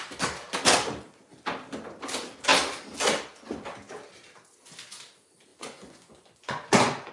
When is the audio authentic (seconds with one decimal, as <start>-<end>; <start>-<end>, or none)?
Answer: 0.0-5.5